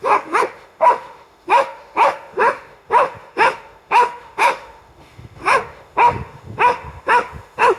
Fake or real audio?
fake